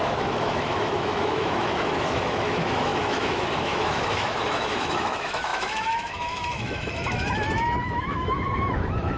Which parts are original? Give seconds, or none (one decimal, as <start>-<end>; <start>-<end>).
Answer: none